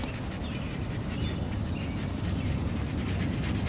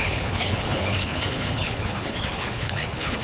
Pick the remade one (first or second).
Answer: second